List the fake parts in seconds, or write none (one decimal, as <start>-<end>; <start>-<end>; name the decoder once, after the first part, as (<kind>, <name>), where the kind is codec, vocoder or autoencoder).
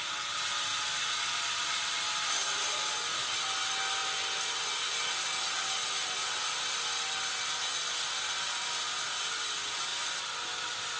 none